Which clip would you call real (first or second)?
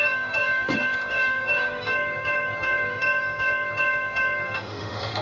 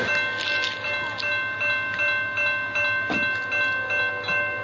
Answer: second